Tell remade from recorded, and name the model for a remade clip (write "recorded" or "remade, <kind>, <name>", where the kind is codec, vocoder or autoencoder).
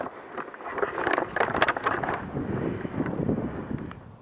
recorded